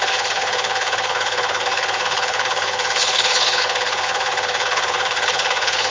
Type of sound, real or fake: fake